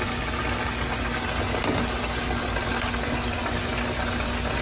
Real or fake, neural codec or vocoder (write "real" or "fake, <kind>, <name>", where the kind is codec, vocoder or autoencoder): real